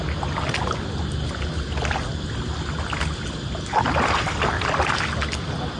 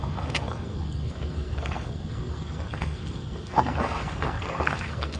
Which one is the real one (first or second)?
first